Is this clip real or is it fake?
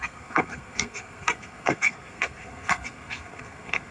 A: fake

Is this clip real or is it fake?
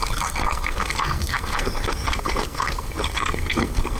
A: fake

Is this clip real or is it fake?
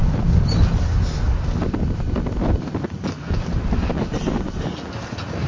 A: real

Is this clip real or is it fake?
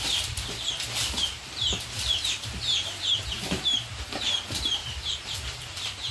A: fake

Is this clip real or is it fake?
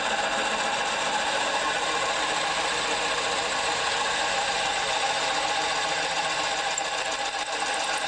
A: real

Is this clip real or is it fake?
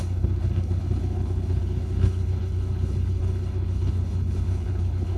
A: fake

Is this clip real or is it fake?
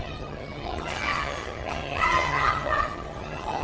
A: fake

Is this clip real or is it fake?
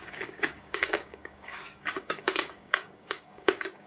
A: fake